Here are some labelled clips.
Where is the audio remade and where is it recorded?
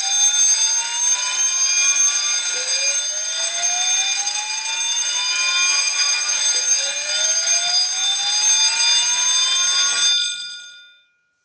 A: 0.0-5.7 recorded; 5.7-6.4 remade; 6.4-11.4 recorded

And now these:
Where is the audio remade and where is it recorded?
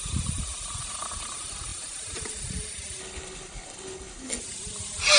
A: 0.0-3.0 recorded; 3.0-4.4 remade; 4.4-5.2 recorded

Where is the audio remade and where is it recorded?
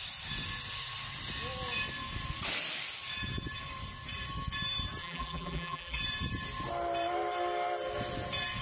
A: 0.0-5.0 recorded; 5.0-6.0 remade; 6.0-8.6 recorded